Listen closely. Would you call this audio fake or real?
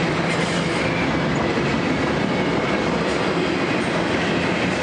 real